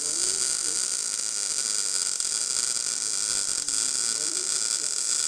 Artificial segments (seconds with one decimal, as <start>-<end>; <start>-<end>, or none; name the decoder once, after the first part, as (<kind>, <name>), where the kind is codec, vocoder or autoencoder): none